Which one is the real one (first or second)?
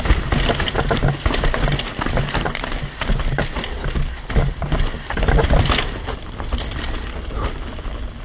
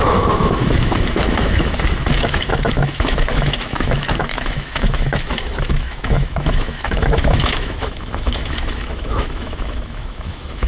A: first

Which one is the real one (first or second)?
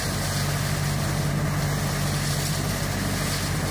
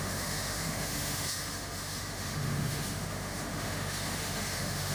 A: first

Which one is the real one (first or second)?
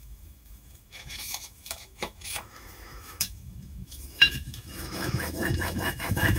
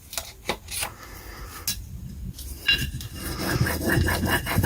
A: second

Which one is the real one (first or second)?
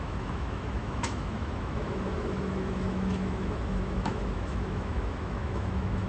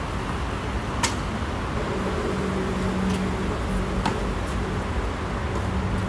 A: second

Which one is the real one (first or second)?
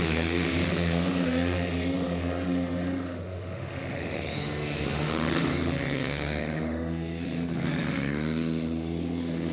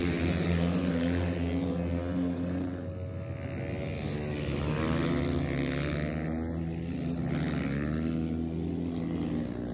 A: second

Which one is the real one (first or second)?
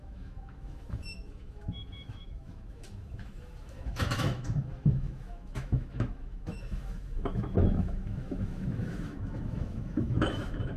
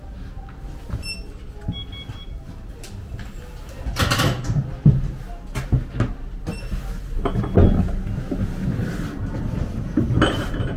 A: second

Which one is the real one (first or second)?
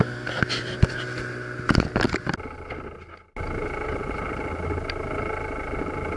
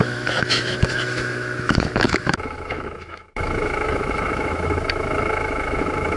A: first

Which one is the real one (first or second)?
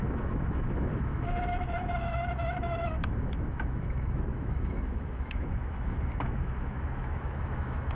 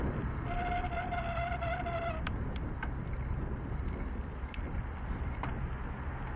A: second